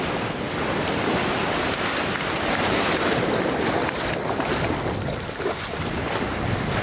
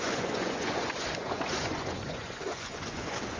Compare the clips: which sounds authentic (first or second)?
first